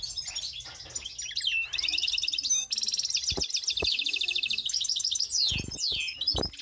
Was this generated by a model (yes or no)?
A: no